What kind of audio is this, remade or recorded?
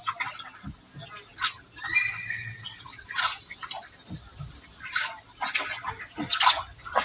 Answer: recorded